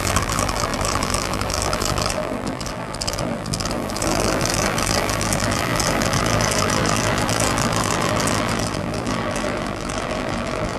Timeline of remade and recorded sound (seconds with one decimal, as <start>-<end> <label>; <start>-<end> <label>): 0.0-10.8 remade

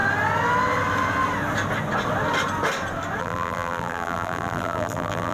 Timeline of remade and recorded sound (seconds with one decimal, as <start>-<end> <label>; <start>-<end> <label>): 0.0-3.2 recorded; 3.2-5.3 remade

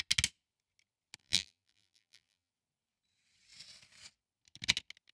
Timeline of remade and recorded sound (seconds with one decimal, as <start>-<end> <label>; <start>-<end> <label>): 0.0-1.2 recorded; 1.2-2.5 remade; 2.5-5.1 recorded

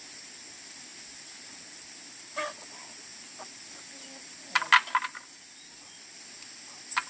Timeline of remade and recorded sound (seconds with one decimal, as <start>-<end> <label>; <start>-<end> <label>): 0.0-7.1 recorded

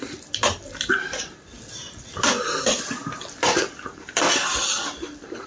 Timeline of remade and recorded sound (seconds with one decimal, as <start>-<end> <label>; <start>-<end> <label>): 0.0-2.6 remade; 2.6-3.0 recorded; 3.0-5.5 remade

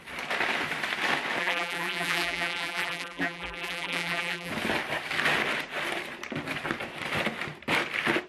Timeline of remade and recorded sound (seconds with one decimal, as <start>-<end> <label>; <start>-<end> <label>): 0.0-1.4 recorded; 1.4-4.5 remade; 4.5-8.3 recorded

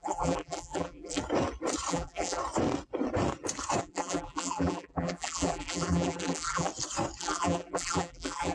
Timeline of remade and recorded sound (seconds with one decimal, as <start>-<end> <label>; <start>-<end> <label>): 0.0-1.2 remade; 1.2-1.9 recorded; 1.9-2.4 remade; 2.4-3.8 recorded; 3.8-6.7 remade; 6.7-7.2 recorded; 7.2-8.5 remade

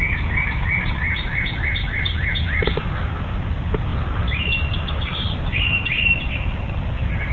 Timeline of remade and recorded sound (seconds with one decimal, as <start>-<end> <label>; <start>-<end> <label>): 0.0-7.3 recorded